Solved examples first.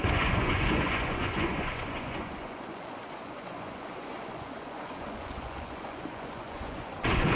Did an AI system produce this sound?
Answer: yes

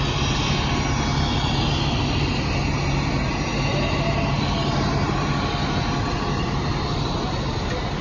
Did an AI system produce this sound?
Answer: no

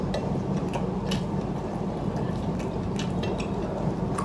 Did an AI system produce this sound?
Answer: no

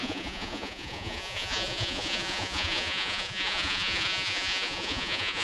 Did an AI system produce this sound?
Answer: yes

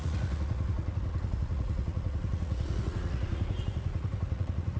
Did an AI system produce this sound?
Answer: yes